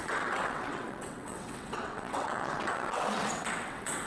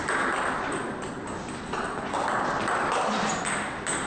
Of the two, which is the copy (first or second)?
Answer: first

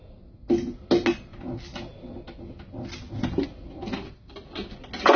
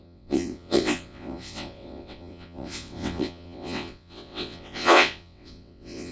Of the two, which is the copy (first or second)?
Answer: second